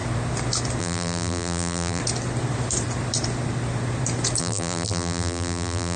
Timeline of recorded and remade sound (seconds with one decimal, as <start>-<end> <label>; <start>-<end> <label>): 0.0-0.8 recorded; 0.8-2.0 remade; 2.0-4.4 recorded; 4.4-6.0 remade